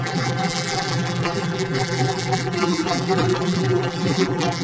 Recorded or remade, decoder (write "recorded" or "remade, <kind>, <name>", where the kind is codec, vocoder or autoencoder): remade, vocoder, BigVGAN v2